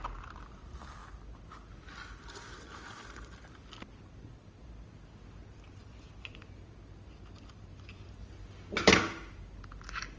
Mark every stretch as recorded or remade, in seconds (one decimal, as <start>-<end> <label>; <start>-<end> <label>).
0.0-10.2 recorded